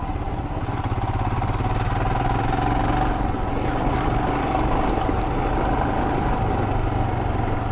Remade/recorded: recorded